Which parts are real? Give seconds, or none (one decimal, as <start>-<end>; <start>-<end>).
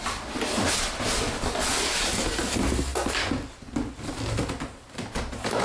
0.0-5.6